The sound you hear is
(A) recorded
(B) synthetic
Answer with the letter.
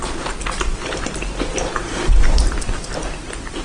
B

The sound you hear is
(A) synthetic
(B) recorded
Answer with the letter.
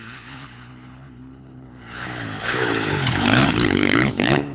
A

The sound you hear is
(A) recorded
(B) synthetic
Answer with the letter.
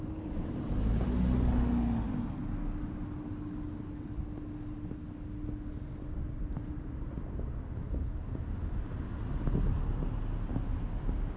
A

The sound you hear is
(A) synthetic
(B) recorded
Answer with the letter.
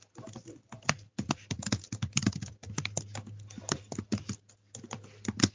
B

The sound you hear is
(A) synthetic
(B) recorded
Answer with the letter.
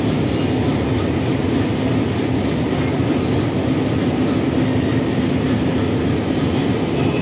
B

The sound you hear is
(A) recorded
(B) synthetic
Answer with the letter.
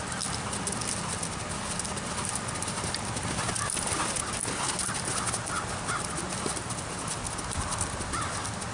A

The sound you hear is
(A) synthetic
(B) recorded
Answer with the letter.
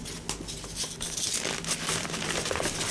B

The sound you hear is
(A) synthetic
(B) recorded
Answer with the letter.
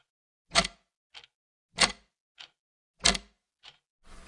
B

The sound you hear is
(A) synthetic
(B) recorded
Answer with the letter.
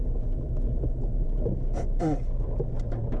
B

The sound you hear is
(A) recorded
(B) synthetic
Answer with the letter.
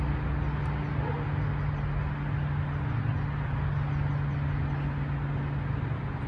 A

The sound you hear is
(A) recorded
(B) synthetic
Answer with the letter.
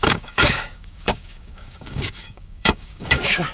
B